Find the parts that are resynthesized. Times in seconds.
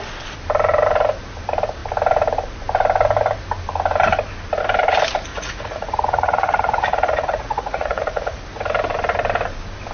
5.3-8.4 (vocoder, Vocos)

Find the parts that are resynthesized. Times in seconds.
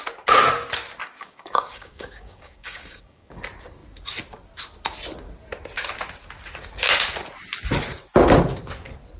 1.0-3.4 (codec, DAC)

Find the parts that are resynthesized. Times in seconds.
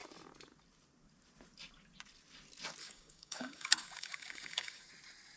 2.8-4.9 (codec, DAC)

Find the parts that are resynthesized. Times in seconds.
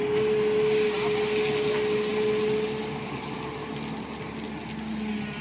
none